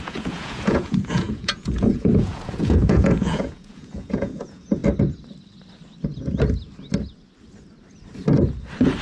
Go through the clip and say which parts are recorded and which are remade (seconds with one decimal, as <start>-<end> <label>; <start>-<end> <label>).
0.0-4.8 remade; 4.8-9.0 recorded